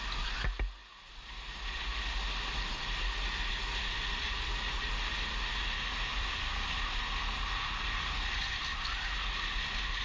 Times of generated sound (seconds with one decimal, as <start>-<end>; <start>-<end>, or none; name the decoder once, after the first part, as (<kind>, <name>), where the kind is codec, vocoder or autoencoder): 6.1-7.0 (vocoder, BigVGAN v2)